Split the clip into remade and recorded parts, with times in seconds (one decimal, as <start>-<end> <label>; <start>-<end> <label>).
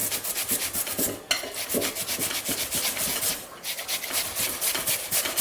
0.0-5.4 recorded